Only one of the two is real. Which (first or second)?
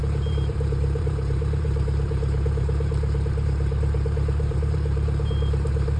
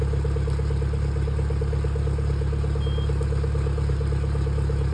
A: second